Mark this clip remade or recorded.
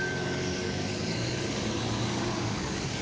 remade